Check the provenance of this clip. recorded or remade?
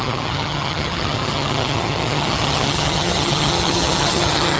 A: remade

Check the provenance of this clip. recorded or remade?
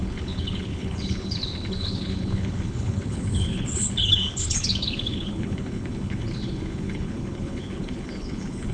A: remade